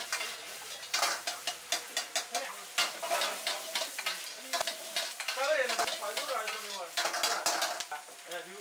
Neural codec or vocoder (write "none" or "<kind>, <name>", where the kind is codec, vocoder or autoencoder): none